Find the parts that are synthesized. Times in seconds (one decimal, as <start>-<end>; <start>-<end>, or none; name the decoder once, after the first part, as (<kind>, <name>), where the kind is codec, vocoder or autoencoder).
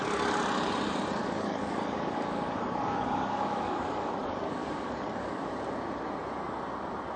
1.2-5.5 (codec, DAC)